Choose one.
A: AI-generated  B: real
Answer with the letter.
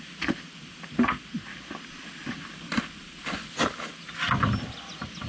B